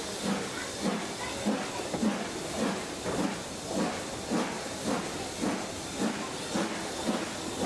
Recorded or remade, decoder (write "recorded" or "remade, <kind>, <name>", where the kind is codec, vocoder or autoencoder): recorded